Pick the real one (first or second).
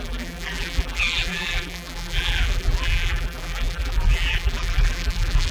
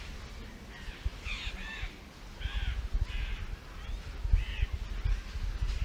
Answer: second